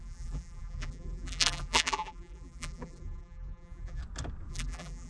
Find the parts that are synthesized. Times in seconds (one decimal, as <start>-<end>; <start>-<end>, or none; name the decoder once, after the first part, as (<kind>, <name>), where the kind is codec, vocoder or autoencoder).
0.0-4.0 (vocoder, BigVGAN v2); 4.5-5.1